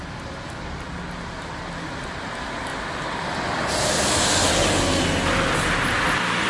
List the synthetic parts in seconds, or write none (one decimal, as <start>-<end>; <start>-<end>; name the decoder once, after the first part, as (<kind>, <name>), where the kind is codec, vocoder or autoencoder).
none